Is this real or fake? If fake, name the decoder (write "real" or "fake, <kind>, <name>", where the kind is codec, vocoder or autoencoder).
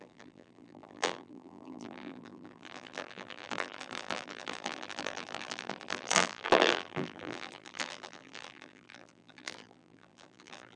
fake, vocoder, BigVGAN v2